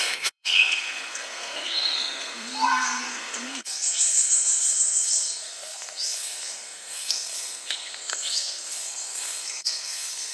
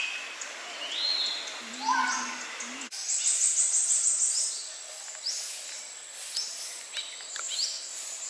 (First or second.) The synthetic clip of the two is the first